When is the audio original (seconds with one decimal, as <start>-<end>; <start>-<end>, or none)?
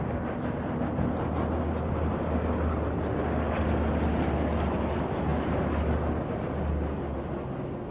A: 0.0-7.9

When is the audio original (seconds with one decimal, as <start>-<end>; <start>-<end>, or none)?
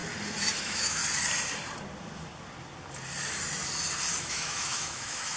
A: 0.0-0.6; 1.0-4.2